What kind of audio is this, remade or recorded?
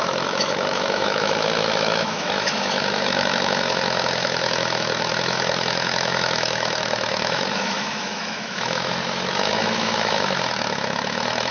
remade